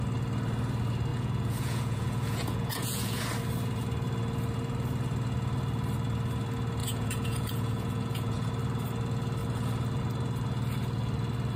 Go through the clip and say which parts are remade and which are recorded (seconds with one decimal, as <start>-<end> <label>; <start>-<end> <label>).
0.0-1.1 recorded; 1.1-3.2 remade; 3.2-6.8 recorded; 6.8-8.5 remade; 8.5-11.6 recorded